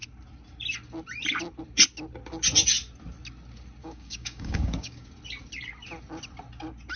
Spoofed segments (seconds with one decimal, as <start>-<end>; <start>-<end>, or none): 3.8-5.1